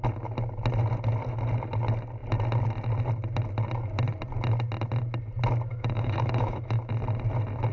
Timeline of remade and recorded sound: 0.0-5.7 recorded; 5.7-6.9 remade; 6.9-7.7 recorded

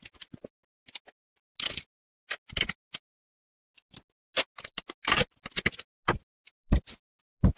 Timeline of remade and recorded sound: 0.0-7.6 recorded

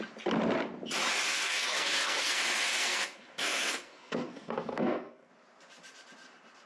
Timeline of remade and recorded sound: 0.0-1.3 recorded; 1.3-5.3 remade; 5.3-6.7 recorded

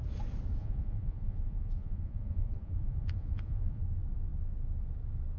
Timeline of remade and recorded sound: 0.0-0.6 recorded; 0.6-3.8 remade; 3.8-5.4 recorded

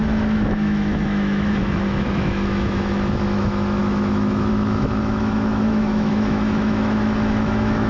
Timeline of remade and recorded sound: 0.0-7.9 remade

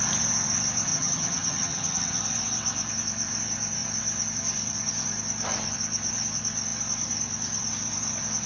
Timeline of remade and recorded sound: 0.0-0.9 recorded; 0.9-2.2 remade; 2.2-8.5 recorded

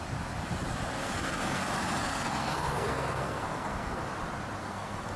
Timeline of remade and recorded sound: 0.0-1.0 recorded; 1.0-1.6 remade; 1.6-2.1 recorded; 2.1-4.0 remade; 4.0-4.6 recorded; 4.6-5.2 remade

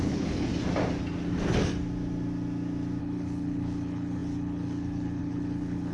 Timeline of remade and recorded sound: 0.0-0.5 remade; 0.5-3.0 recorded; 3.0-5.9 remade